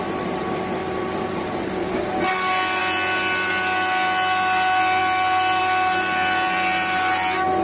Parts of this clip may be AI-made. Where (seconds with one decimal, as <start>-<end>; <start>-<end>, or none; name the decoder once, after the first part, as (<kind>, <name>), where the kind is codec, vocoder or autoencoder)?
none